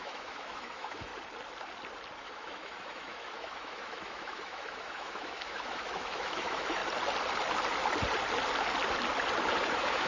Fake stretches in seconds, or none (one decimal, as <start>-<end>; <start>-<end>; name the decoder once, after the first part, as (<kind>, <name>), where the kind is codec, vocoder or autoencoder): 0.0-1.1 (autoencoder, DAC-VAE); 2.2-6.8; 9.6-10.1